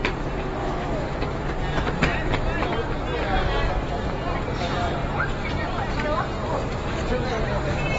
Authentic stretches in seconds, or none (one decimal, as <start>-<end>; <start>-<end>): 0.0-0.6; 1.5-8.0